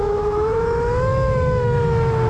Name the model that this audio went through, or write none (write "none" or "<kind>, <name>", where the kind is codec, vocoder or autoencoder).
autoencoder, DAC-VAE